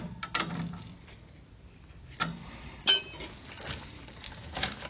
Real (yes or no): yes